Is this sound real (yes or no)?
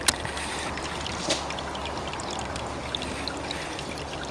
yes